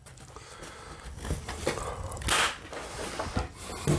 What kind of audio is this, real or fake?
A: real